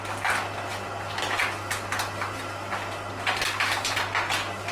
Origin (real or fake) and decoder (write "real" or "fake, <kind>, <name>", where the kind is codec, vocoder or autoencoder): real